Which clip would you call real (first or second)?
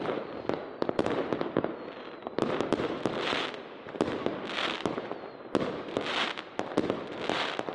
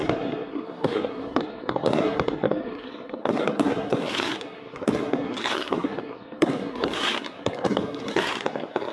first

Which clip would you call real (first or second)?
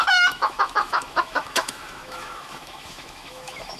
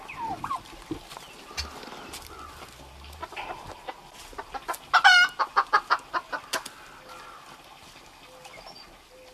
second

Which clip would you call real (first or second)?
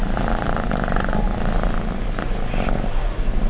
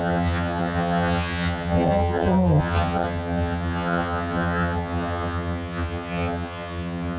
first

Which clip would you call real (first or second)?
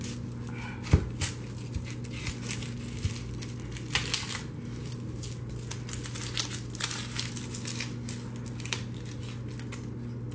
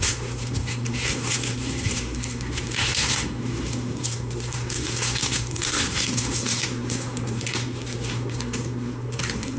first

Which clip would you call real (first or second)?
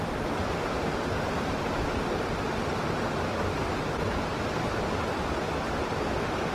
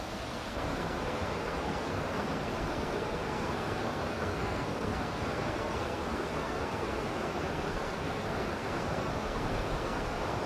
first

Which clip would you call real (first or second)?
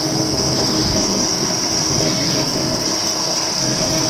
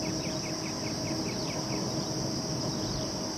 second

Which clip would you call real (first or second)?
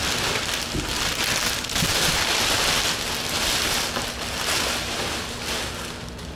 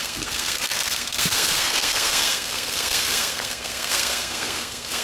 first